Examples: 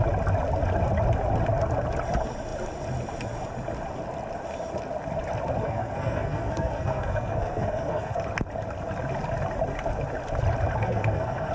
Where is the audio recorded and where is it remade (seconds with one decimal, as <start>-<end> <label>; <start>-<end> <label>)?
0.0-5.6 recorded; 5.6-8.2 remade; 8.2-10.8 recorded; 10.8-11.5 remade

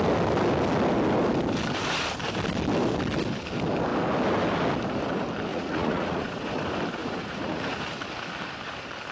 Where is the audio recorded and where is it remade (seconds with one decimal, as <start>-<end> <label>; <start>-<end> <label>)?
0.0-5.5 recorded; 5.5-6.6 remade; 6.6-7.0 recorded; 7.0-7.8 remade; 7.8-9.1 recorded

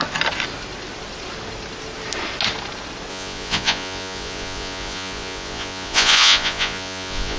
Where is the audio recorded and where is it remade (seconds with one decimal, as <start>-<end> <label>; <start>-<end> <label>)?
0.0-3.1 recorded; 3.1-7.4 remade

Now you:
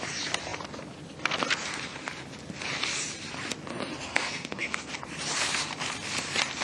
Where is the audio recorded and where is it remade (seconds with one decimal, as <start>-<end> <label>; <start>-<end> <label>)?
0.0-4.1 recorded; 4.1-4.9 remade; 4.9-6.6 recorded